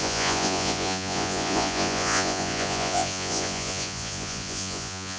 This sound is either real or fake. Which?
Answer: fake